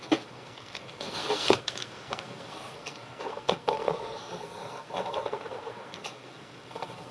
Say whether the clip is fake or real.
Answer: fake